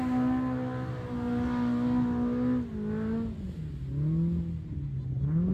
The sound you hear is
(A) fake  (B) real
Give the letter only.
B